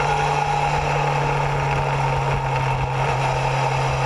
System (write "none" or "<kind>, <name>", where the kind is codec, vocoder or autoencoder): none